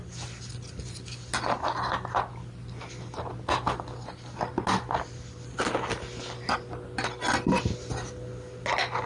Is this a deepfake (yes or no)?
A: no